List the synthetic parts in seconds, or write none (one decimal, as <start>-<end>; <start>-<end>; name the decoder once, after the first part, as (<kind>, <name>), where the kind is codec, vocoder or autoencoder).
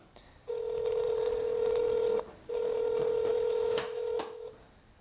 3.3-4.5 (autoencoder, DAC-VAE)